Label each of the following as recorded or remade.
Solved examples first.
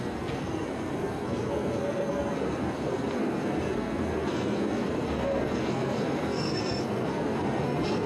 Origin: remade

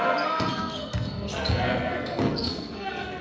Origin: remade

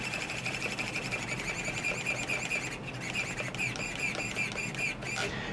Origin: recorded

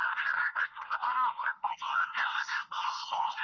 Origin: remade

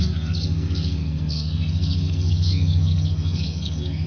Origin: remade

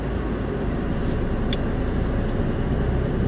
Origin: recorded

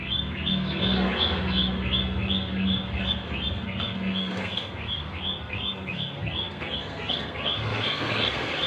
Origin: remade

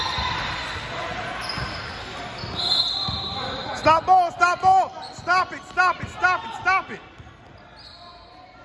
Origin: recorded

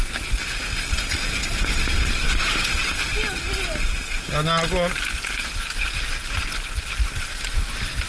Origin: recorded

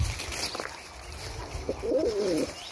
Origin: recorded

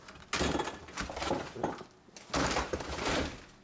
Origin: recorded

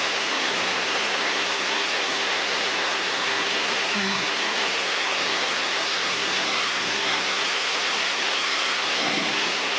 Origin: remade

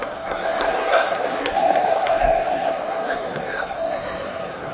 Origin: remade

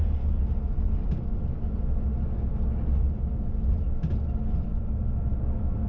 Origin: recorded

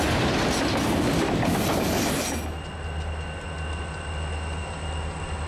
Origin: recorded